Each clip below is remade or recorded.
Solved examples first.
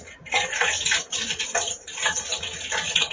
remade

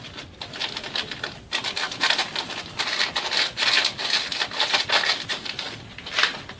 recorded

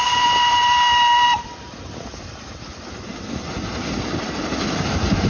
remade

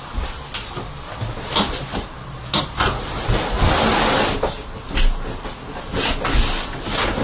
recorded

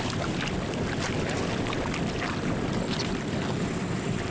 recorded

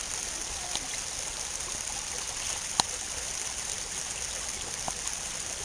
recorded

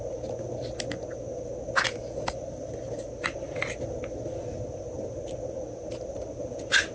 recorded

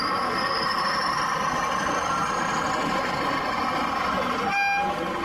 recorded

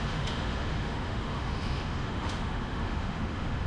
remade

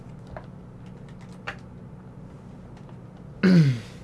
recorded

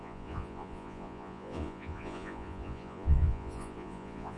remade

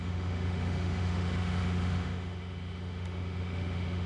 remade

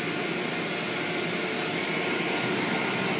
recorded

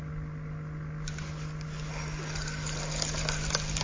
recorded